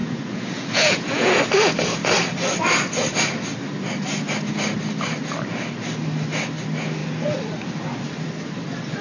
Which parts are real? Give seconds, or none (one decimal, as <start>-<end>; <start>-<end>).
1.4-9.0